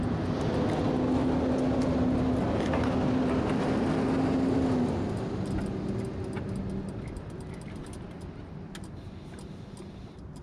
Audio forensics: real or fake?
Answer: real